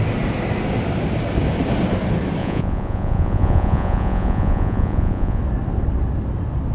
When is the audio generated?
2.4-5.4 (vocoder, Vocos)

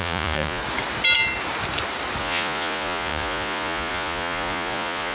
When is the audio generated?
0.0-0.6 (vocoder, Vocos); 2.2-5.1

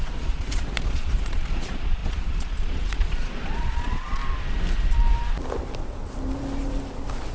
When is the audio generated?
0.0-4.2 (vocoder, Vocos)